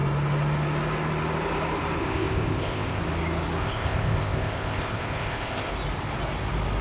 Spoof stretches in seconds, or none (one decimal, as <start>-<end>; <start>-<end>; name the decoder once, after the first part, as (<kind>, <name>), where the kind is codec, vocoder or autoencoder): 2.0-3.0 (codec, ZipCodec); 3.6-5.7

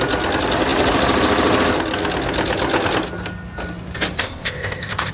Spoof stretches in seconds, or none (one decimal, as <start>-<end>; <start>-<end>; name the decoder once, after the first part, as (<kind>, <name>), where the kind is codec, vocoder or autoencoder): 4.2-5.1 (codec, ZipCodec)

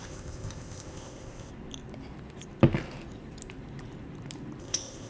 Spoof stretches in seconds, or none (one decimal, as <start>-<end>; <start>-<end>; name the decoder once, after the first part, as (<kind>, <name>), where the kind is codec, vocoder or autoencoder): 0.0-1.5 (codec, ZipCodec); 4.6-5.1

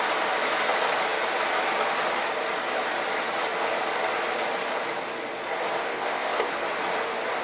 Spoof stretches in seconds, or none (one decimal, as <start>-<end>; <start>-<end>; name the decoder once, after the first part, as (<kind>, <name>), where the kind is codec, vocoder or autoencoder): 5.8-6.5 (codec, ZipCodec)

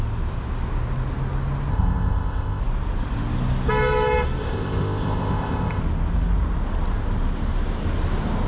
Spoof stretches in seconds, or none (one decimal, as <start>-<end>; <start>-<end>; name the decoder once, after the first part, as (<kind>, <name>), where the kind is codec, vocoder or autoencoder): 1.7-2.6 (codec, ZipCodec); 4.4-5.8

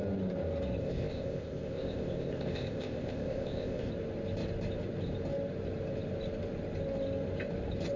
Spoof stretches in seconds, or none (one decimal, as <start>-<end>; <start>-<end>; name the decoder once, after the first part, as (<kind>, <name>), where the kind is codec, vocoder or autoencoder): 0.8-3.9 (codec, ZipCodec)

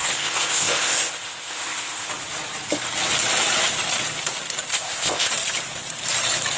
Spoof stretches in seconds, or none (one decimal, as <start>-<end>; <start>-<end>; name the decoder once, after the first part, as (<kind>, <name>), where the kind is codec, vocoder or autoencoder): 0.0-2.1 (codec, ZipCodec); 4.7-5.3